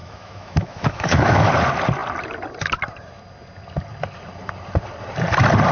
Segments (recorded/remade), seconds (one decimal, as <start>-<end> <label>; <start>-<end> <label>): 0.0-1.5 remade; 1.5-5.7 recorded